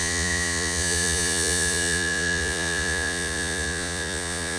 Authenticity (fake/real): fake